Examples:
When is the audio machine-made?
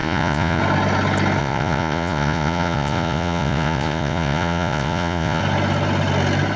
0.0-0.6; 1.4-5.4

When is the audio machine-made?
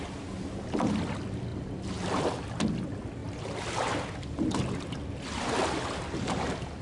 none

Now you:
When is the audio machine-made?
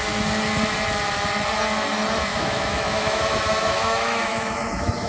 2.3-5.1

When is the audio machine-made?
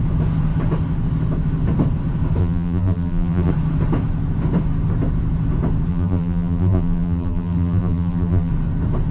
2.4-3.5; 5.9-8.5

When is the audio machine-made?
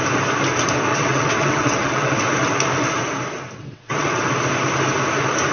0.9-2.2; 3.6-4.2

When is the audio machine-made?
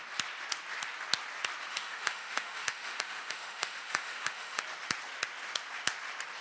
1.6-4.6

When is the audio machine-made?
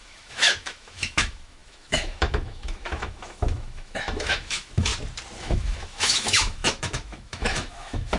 0.0-4.9; 5.4-8.2